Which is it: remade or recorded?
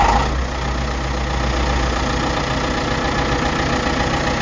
recorded